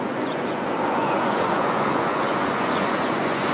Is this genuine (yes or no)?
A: no